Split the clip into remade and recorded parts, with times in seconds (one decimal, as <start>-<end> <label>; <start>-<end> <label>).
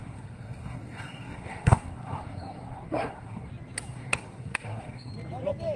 0.0-3.5 remade; 3.5-3.9 recorded; 3.9-5.1 remade; 5.1-5.8 recorded